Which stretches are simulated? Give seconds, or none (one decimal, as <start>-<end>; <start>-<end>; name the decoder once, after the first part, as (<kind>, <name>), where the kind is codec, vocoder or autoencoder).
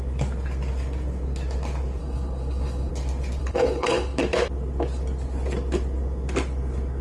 2.0-2.9 (codec, HILCodec); 3.4-4.2